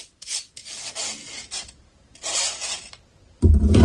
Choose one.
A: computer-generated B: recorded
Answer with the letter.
A